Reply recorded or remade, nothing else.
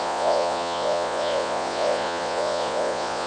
remade